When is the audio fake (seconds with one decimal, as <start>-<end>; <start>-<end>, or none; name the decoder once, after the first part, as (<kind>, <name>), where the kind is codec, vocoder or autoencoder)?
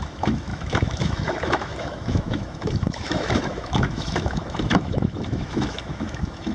0.0-6.5 (autoencoder, DAC-VAE)